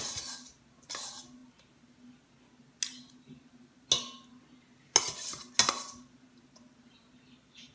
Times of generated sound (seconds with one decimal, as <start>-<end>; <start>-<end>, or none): none